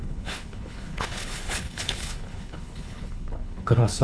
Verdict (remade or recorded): remade